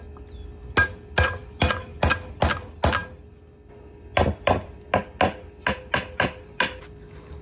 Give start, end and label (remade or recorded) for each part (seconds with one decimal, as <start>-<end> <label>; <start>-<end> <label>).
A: 0.0-7.4 recorded